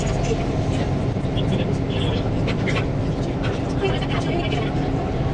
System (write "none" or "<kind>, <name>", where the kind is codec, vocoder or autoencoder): none